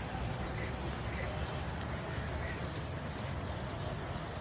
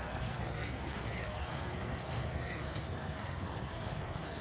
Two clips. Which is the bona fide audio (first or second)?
first